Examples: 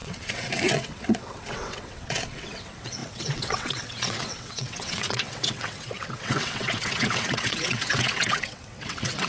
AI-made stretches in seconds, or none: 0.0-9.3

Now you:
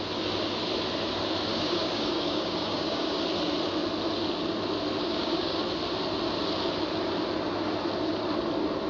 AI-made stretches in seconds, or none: 1.5-3.2; 5.0-5.6

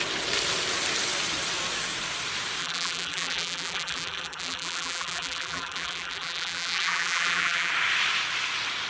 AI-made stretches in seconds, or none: 2.6-7.7

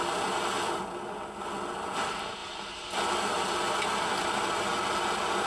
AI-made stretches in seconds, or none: none

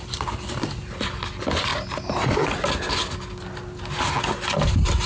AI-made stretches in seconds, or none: none

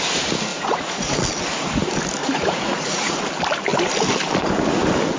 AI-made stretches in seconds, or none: 0.5-1.2; 2.2-3.2